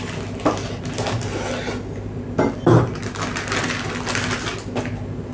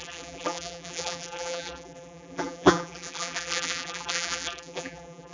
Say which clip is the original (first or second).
first